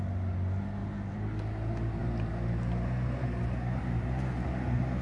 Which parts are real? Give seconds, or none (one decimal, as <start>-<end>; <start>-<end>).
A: 0.0-5.0